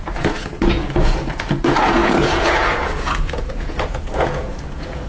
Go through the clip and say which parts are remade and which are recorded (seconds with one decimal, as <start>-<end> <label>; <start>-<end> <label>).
0.0-5.1 remade